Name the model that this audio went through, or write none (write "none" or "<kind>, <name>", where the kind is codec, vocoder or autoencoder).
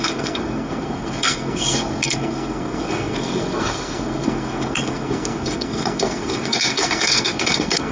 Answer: codec, SNAC